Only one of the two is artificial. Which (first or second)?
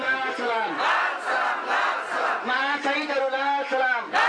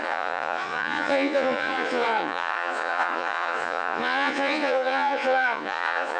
second